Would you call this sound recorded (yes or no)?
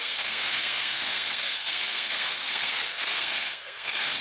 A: no